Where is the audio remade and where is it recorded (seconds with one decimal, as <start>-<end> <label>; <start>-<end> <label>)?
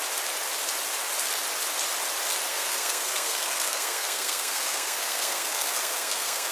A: 0.0-2.5 recorded; 2.5-6.5 remade